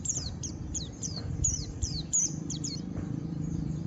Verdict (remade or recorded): remade